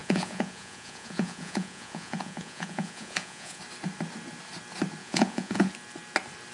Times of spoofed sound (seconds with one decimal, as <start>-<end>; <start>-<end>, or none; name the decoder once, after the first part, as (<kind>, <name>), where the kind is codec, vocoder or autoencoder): 0.0-3.6 (vocoder, Vocos); 5.0-5.7